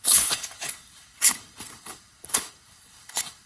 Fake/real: fake